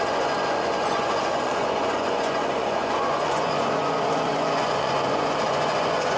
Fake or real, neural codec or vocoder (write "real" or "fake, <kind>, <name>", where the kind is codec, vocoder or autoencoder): fake, vocoder, Vocos